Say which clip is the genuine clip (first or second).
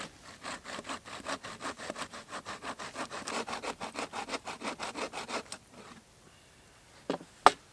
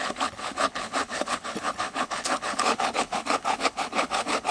first